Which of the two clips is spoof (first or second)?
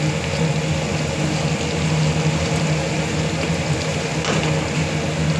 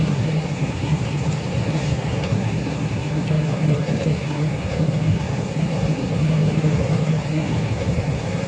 second